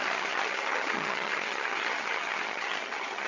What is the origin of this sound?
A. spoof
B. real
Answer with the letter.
A